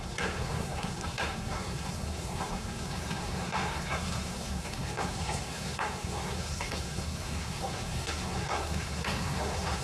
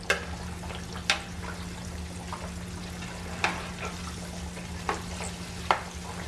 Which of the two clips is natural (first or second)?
second